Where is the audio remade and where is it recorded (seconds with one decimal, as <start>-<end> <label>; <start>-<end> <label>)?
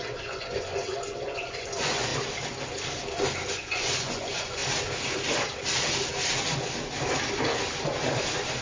0.0-2.1 remade; 2.1-3.5 recorded; 3.5-4.6 remade; 4.6-8.6 recorded